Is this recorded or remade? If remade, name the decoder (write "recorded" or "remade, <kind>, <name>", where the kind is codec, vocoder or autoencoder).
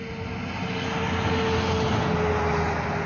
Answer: recorded